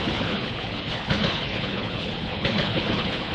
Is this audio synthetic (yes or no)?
yes